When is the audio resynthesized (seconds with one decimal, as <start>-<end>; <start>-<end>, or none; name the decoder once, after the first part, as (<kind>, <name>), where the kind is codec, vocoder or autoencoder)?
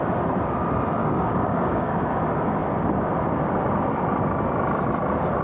1.0-2.2 (codec, DAC)